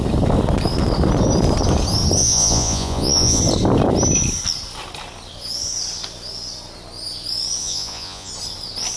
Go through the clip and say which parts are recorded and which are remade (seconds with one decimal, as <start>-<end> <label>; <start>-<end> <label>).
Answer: 0.0-2.2 recorded; 2.2-3.4 remade; 3.4-7.6 recorded; 7.6-8.3 remade; 8.3-9.0 recorded